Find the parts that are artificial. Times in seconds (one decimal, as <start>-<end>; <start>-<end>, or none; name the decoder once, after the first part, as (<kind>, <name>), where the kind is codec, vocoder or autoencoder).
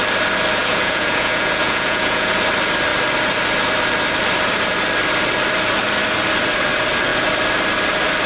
0.6-2.3 (vocoder, Vocos)